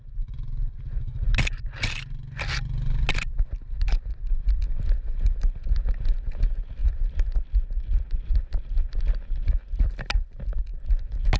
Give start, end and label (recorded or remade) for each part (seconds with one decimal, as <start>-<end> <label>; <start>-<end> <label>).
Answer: 0.0-11.4 recorded